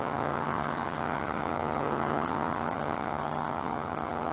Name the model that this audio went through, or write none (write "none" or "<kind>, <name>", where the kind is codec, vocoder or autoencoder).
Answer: vocoder, HiFi-GAN